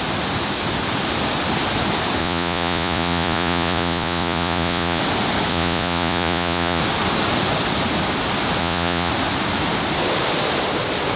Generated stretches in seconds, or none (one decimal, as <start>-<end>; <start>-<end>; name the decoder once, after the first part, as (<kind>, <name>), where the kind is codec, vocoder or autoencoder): 2.2-5.0 (vocoder, Vocos); 5.5-6.8; 8.6-9.1